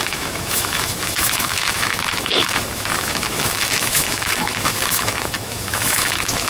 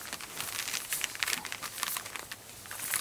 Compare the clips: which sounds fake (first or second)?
first